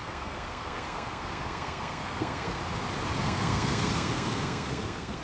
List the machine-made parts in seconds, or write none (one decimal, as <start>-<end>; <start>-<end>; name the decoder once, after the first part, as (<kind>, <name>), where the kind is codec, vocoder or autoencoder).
0.0-2.6 (codec, SNAC); 3.2-5.2